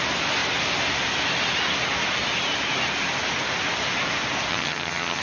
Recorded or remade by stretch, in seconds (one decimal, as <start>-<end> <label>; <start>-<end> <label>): 0.0-4.5 recorded; 4.5-5.2 remade